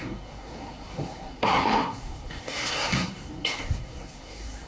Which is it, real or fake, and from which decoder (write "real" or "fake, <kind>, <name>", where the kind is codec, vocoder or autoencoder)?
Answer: fake, codec, SNAC